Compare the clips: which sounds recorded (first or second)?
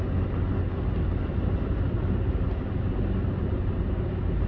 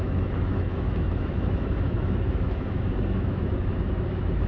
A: first